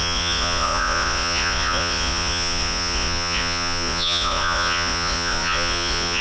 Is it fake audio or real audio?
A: fake